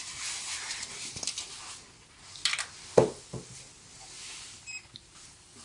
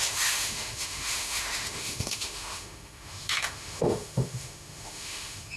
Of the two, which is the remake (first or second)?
second